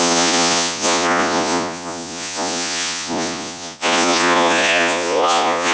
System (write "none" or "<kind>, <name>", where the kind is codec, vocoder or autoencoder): vocoder, Vocos